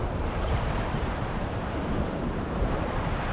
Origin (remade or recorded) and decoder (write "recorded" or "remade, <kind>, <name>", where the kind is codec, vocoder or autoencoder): remade, vocoder, BigVGAN v2